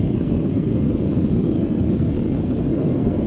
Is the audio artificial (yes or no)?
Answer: yes